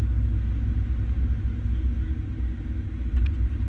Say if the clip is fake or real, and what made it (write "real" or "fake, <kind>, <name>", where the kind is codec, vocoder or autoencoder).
real